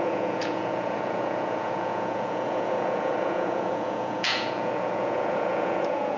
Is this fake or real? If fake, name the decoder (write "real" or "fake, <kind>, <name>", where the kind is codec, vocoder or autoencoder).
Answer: fake, vocoder, Vocos